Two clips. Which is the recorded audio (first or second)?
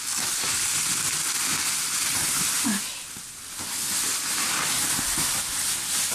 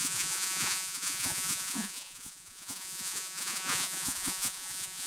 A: first